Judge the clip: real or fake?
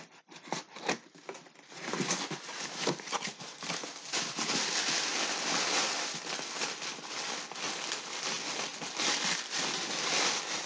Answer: real